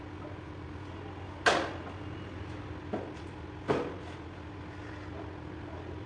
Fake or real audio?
real